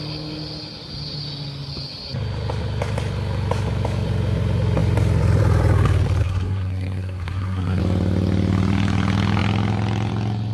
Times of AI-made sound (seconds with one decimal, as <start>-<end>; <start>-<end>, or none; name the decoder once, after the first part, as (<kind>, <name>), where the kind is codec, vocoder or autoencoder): 6.2-7.8 (codec, SNAC)